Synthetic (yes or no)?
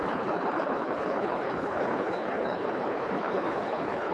yes